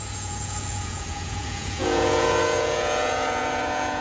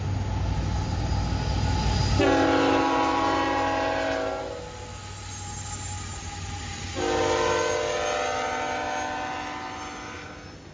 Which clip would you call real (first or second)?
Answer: second